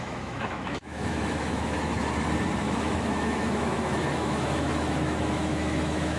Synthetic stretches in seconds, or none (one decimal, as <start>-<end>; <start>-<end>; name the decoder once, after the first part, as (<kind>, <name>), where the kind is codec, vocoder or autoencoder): 0.0-1.9 (autoencoder, DAC-VAE); 2.6-6.2